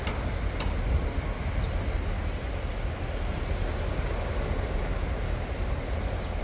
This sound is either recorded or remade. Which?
recorded